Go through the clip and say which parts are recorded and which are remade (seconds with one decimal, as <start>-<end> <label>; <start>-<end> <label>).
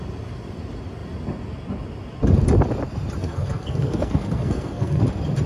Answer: 0.0-3.2 recorded; 3.2-5.0 remade; 5.0-5.5 recorded